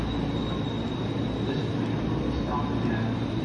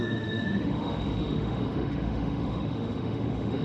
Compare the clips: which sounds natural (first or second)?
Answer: first